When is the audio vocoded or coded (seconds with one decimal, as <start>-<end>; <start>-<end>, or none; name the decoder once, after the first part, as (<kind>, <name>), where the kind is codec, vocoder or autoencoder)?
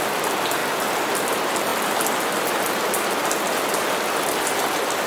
none